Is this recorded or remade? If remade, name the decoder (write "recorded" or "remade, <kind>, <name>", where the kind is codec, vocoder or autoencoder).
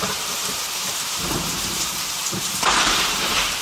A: remade, vocoder, BigVGAN v2